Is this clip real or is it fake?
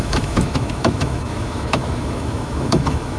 fake